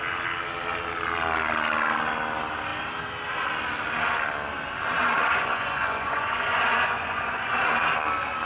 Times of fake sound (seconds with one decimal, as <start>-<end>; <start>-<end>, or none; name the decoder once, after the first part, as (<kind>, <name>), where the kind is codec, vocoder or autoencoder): 5.0-7.5 (vocoder, Vocos)